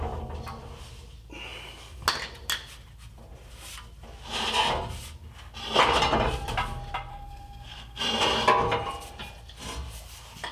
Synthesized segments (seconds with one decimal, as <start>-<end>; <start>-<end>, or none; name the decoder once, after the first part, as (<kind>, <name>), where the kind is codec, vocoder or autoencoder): 7.1-8.0 (codec, SNAC)

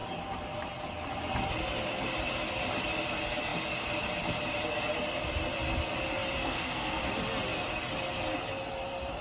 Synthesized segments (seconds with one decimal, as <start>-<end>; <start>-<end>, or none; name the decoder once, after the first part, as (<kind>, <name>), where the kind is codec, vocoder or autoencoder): 6.4-7.0 (codec, SNAC)

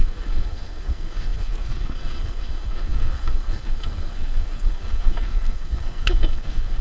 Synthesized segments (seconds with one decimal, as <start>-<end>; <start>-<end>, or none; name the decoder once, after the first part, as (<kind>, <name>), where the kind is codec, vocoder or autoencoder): 0.0-6.8 (codec, SNAC)

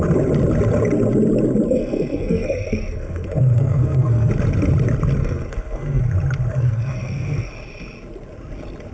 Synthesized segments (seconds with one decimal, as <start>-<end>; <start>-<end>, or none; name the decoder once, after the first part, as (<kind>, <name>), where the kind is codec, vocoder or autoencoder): 1.8-4.3 (codec, SNAC); 5.2-6.0; 6.5-7.5

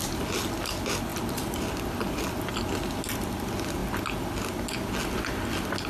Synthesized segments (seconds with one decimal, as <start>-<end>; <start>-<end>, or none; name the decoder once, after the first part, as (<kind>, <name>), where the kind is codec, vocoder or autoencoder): none

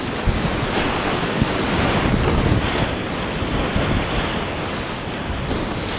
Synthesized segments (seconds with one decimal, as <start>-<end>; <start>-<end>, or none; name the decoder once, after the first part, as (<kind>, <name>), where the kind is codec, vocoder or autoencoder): 0.9-1.5 (codec, SNAC)

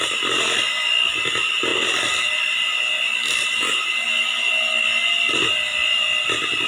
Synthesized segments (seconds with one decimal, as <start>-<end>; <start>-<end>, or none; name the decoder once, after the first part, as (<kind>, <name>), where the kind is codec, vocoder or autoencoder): none